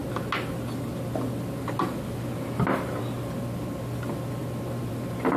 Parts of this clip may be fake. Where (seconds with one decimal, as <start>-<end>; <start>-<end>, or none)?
none

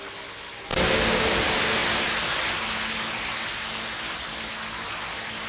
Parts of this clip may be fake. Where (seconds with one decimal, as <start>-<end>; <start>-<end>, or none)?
none

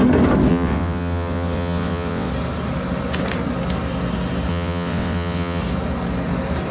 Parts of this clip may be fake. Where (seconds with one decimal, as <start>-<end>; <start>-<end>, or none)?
0.5-2.3; 4.5-5.6

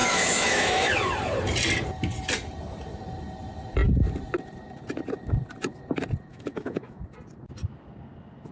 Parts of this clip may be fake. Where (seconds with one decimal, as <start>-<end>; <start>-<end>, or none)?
0.0-0.9; 6.3-7.0

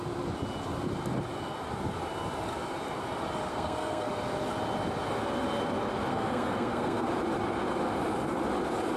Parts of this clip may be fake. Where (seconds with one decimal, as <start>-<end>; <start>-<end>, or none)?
3.5-4.1; 6.1-7.1

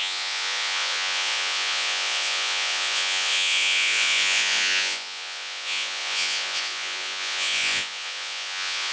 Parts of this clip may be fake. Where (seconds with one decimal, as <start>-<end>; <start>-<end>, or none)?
0.0-8.9